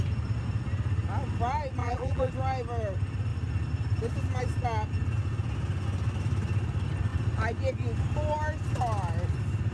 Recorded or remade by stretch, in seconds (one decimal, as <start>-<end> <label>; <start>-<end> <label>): 0.0-1.8 recorded; 1.8-2.3 remade; 2.3-9.7 recorded